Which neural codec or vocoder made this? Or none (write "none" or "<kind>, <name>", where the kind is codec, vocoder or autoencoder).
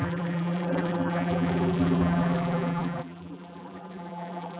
vocoder, BigVGAN v2